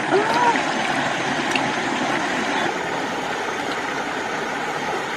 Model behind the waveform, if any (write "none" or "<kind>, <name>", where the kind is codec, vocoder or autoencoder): none